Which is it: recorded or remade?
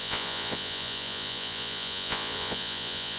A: remade